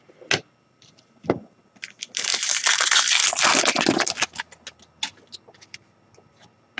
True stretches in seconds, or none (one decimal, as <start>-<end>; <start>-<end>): 0.0-6.8